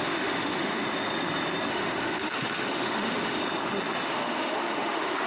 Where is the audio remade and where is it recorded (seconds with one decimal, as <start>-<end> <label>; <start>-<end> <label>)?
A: 0.0-0.8 remade; 0.8-1.7 recorded; 1.7-3.4 remade; 3.4-4.1 recorded; 4.1-5.3 remade